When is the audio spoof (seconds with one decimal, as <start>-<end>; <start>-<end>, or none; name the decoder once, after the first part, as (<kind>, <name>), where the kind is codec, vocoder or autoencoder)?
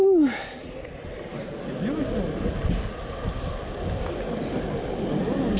0.0-0.6 (codec, DAC)